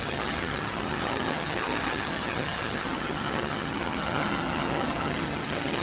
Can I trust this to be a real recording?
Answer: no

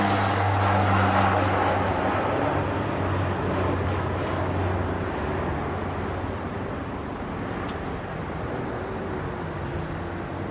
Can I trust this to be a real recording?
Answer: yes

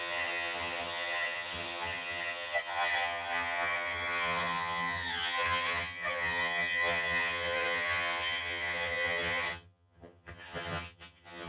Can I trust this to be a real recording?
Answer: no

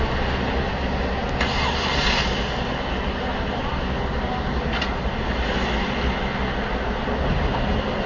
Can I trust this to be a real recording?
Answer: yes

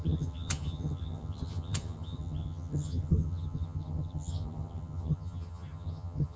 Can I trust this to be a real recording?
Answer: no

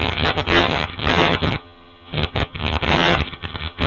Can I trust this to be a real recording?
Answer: no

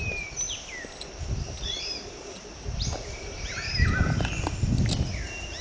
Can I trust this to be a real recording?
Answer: yes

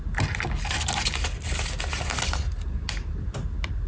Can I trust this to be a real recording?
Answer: yes